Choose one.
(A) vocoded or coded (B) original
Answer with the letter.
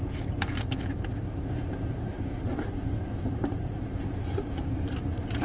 A